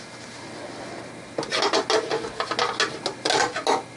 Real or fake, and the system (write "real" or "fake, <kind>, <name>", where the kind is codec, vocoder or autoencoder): real